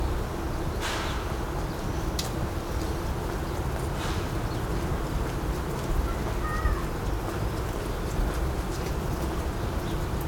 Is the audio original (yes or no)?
yes